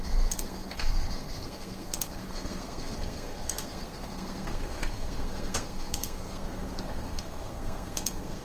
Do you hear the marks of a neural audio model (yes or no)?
yes